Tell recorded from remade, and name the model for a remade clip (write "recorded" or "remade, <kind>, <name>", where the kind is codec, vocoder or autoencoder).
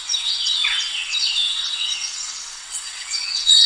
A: remade, vocoder, WaveNeXt